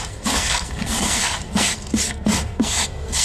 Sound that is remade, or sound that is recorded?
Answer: remade